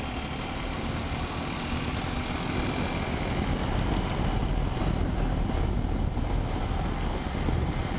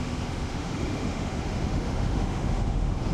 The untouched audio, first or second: first